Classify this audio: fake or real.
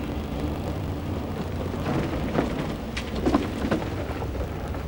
real